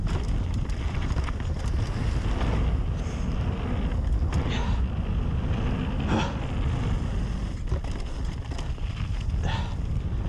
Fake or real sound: real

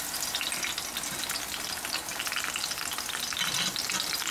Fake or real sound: real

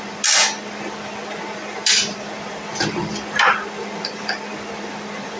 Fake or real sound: real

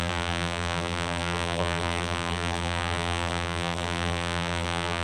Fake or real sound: fake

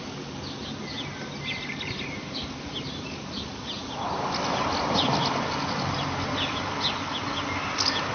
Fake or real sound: real